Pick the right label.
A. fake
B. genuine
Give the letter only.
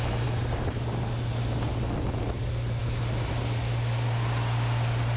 B